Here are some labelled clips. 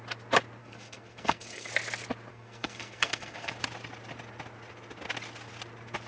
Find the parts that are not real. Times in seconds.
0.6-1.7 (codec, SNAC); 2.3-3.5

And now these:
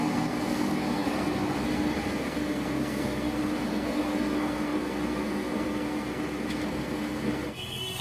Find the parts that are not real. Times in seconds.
0.0-8.0 (codec, SNAC)